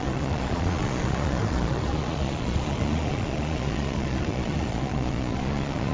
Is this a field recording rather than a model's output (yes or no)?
no